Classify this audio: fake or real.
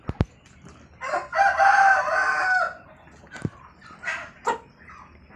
real